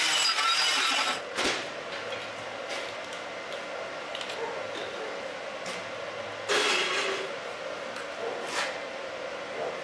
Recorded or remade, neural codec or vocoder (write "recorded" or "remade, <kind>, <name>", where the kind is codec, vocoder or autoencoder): recorded